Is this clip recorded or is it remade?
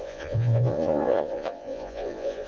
remade